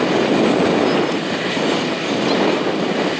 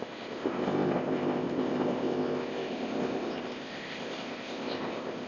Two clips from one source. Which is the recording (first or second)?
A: first